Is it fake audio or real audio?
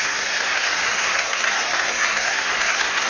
fake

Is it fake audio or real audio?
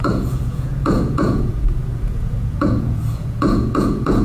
fake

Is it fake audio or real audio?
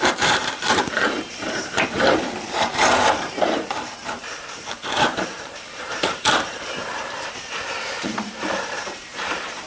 fake